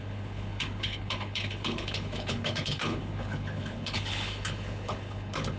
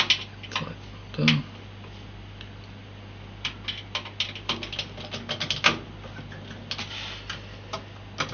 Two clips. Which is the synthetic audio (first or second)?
first